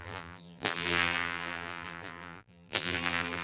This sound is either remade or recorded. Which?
remade